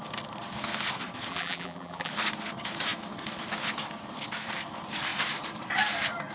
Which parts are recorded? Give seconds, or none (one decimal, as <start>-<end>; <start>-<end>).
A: 0.0-1.3; 2.1-6.3